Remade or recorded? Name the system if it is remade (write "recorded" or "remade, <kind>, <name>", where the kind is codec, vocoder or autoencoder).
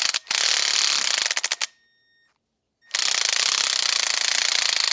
recorded